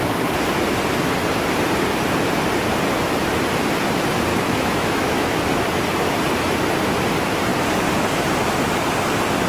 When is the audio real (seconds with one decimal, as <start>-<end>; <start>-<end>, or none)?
0.0-4.3; 5.4-9.5

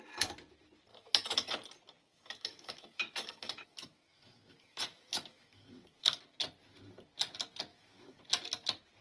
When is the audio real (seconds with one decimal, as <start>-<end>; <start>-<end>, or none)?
0.0-0.9; 1.5-2.0; 6.2-7.7; 8.2-9.0

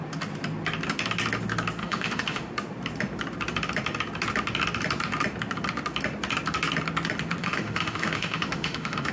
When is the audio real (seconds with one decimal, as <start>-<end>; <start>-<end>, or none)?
0.0-1.8; 2.5-7.4

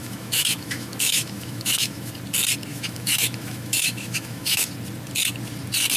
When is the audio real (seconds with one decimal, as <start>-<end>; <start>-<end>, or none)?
2.1-2.7; 4.7-6.0

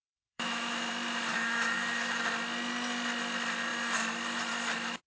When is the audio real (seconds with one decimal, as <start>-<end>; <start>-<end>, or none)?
0.9-1.3; 2.2-5.1

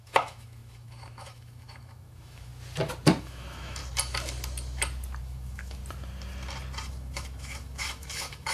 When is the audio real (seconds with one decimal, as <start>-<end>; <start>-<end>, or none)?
2.5-3.2; 3.8-5.2; 5.8-6.9

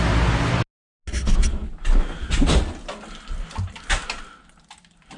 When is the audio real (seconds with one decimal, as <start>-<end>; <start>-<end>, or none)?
0.0-5.2